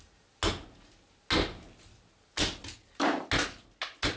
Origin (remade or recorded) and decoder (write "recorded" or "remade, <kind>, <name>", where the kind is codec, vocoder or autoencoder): recorded